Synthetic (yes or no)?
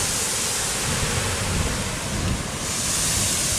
no